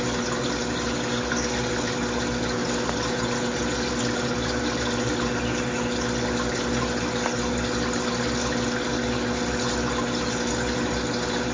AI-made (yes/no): no